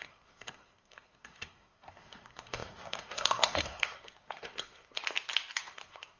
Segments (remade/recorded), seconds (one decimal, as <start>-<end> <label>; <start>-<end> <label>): 0.0-5.0 remade; 5.0-5.6 recorded; 5.6-6.2 remade